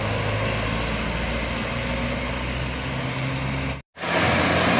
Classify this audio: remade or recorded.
recorded